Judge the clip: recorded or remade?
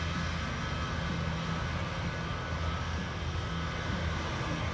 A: recorded